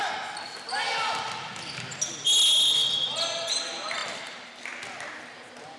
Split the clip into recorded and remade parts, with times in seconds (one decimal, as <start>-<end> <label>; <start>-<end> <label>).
0.0-5.8 recorded